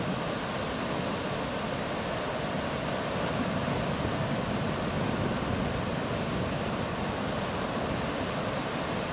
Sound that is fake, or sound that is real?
real